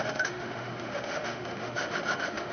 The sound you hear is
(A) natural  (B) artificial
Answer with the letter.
B